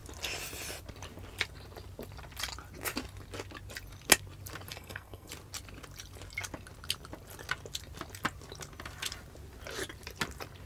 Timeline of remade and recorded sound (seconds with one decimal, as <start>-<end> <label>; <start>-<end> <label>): 0.0-4.7 recorded; 4.7-5.3 remade; 5.3-10.7 recorded